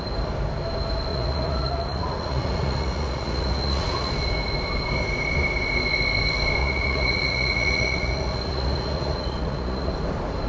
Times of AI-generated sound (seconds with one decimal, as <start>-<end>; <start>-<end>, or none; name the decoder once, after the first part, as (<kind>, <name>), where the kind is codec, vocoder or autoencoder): 1.1-4.1 (vocoder, Vocos); 6.6-9.9